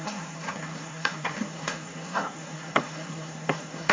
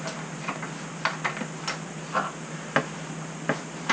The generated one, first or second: first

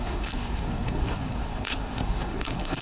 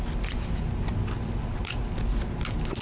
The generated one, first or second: first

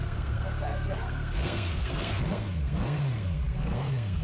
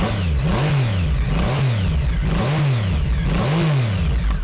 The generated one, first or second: first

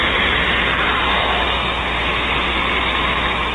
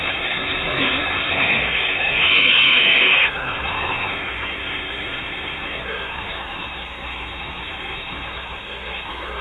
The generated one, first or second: second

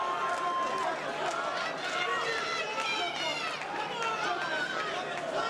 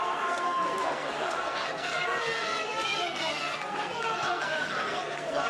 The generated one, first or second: second